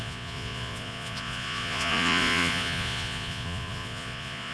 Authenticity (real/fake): fake